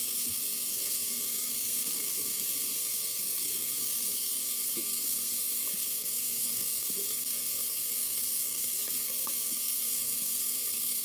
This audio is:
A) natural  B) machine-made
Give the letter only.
B